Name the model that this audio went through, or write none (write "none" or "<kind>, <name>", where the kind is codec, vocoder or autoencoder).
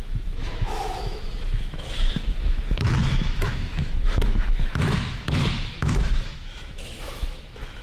autoencoder, DAC-VAE